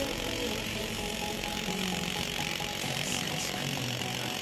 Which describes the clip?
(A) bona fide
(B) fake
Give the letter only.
B